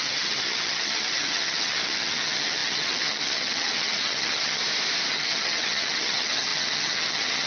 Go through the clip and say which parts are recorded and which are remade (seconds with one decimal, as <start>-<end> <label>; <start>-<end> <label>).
0.0-4.6 remade; 4.6-5.1 recorded; 5.1-7.5 remade